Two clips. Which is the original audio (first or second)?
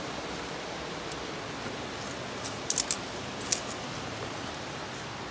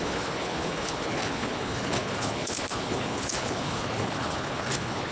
first